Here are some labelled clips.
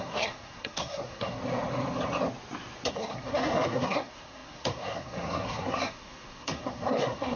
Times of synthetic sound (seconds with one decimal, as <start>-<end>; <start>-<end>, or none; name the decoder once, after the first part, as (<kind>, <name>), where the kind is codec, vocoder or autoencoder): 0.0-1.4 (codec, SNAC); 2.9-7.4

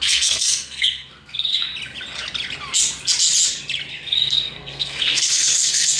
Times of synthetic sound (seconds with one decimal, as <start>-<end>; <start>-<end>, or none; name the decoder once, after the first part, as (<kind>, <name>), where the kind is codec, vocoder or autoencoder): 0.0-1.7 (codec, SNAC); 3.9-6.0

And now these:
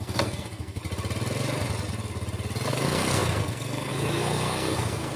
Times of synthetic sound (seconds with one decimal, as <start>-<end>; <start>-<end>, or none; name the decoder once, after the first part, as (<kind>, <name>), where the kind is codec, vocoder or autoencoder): 0.0-0.8 (codec, SNAC); 2.7-5.2